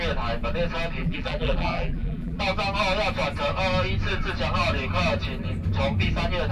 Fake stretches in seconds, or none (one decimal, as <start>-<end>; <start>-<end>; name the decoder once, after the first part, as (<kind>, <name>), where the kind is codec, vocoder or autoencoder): 1.0-2.4 (vocoder, BigVGAN v2)